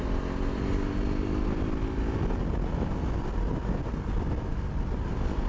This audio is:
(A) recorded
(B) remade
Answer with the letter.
A